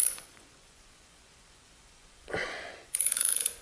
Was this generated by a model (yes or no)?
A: yes